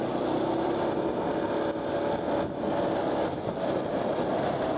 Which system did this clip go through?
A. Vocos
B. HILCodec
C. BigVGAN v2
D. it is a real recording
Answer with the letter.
D